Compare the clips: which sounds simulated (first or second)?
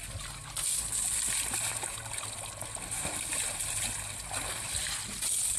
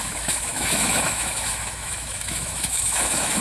second